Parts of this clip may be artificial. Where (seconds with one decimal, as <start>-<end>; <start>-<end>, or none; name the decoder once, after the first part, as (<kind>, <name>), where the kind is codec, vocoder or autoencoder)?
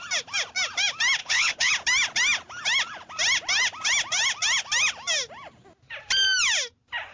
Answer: 1.2-1.7 (codec, HILCodec)